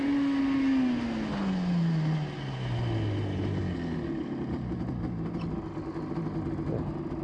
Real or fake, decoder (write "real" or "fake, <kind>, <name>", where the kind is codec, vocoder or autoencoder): real